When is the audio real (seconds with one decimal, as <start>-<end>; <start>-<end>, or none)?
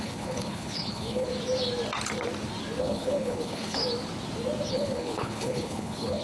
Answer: 1.3-2.8; 3.8-4.7